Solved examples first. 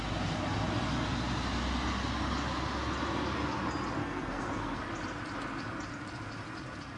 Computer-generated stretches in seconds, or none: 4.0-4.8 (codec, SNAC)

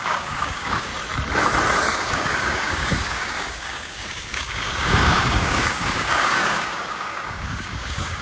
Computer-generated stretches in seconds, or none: 0.0-0.9 (codec, DAC); 1.8-8.2

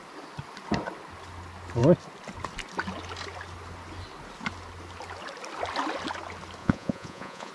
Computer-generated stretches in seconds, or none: 6.6-7.5 (vocoder, Vocos)

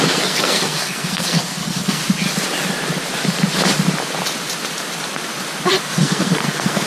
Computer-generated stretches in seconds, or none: 0.0-2.0 (codec, SNAC); 5.8-6.9

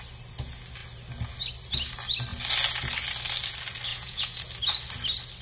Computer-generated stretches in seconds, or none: 3.9-4.4 (vocoder, Vocos)

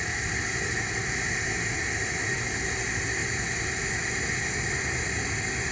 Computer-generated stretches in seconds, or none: none